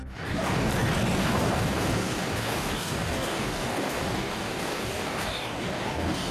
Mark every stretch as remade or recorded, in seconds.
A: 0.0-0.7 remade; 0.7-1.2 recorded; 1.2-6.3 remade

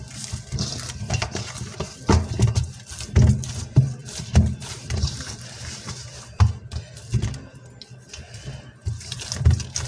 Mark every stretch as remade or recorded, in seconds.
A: 0.0-4.0 recorded; 4.0-5.9 remade; 5.9-9.9 recorded

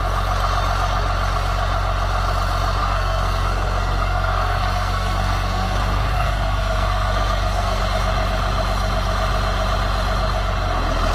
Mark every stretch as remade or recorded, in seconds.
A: 0.0-2.8 recorded; 2.8-7.8 remade; 7.8-11.1 recorded

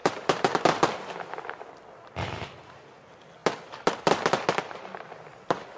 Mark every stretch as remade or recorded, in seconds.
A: 0.0-5.8 recorded